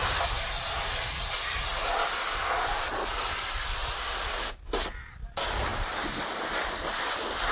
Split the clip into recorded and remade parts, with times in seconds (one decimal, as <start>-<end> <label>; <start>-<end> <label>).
0.0-0.6 remade; 0.6-3.8 recorded; 3.8-4.4 remade; 4.4-5.7 recorded; 5.7-7.1 remade; 7.1-7.5 recorded